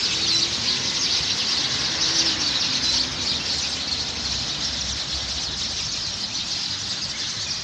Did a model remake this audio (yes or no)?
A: no